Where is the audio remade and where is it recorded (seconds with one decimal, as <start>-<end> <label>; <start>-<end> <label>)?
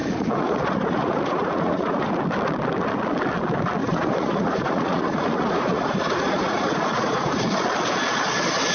0.0-2.1 remade; 2.1-3.8 recorded; 3.8-7.4 remade; 7.4-8.7 recorded